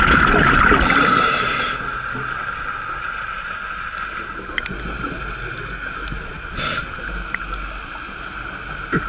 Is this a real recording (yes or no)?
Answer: yes